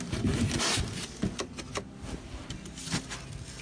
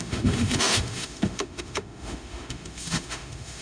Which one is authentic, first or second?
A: first